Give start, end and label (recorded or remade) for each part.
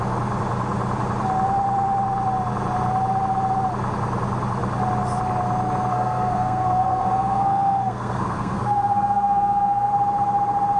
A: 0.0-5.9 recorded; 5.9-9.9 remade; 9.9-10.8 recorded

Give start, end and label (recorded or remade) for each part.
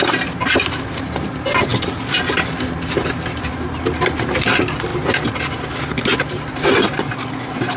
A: 0.0-7.8 recorded